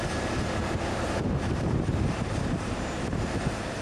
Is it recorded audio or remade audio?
remade